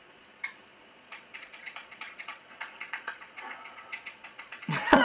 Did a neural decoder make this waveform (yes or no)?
yes